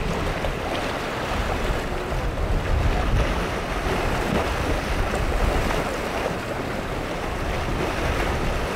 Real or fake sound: real